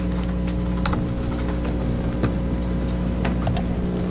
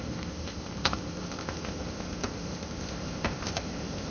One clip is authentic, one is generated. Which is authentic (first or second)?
first